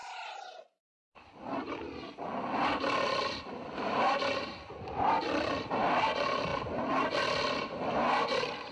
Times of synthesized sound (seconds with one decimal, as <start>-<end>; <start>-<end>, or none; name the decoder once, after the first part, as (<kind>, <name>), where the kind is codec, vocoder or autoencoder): none